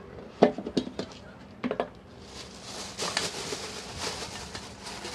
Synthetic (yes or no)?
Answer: no